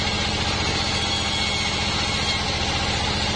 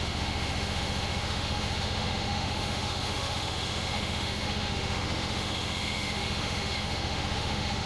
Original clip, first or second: first